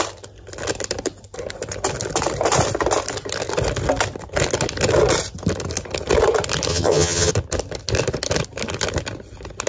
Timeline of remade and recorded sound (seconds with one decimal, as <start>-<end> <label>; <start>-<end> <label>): 0.0-6.7 recorded; 6.7-7.3 remade; 7.3-9.7 recorded

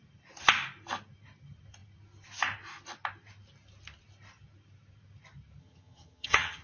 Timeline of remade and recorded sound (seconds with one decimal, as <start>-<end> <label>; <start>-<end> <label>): 0.0-5.6 recorded; 5.6-6.6 remade

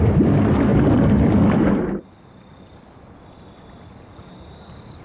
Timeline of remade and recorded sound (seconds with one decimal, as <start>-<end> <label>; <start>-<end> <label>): 0.0-5.0 recorded

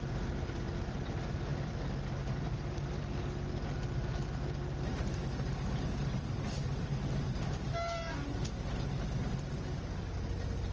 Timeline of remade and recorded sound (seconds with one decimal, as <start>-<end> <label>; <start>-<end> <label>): 0.0-10.7 recorded

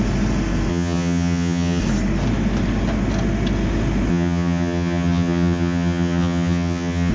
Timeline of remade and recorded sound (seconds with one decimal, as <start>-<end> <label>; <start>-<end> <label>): 0.0-0.7 recorded; 0.7-1.8 remade; 1.8-4.1 recorded; 4.1-7.1 remade

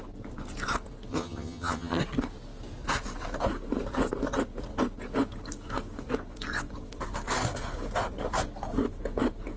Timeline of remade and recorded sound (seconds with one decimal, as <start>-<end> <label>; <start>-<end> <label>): 0.0-1.1 recorded; 1.1-2.0 remade; 2.0-9.6 recorded

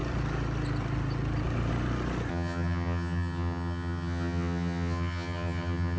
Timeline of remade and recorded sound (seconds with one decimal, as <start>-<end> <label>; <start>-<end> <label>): 0.0-2.3 recorded; 2.3-6.0 remade

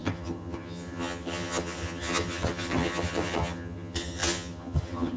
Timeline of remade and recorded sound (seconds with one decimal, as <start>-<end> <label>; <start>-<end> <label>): 0.0-5.2 remade